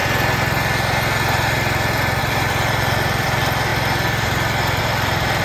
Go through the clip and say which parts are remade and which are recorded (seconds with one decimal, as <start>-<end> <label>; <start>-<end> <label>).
0.0-2.2 recorded; 2.2-3.7 remade; 3.7-4.8 recorded; 4.8-5.4 remade